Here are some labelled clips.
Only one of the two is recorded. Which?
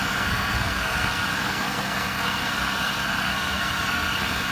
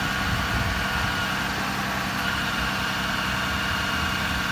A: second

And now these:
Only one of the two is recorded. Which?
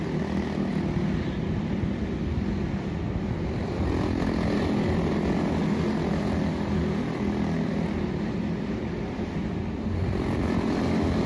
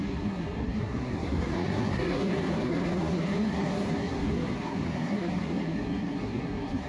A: first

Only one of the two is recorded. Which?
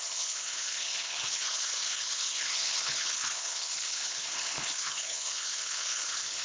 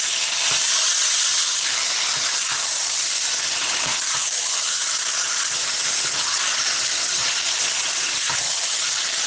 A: second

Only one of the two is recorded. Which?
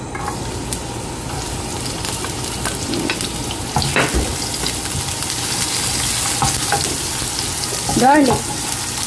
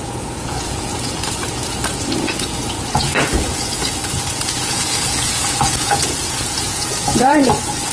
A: first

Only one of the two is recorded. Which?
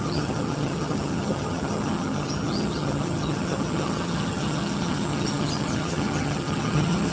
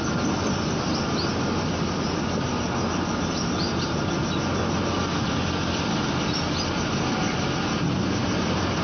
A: second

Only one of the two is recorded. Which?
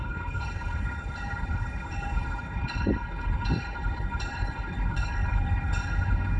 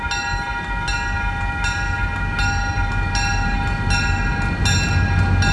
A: second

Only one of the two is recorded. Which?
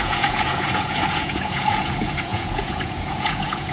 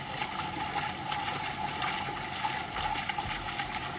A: second